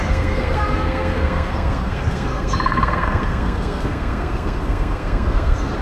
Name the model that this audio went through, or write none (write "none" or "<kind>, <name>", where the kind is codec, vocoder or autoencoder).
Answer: codec, SNAC